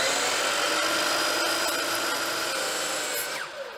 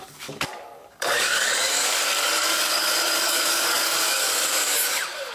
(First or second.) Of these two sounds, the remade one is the second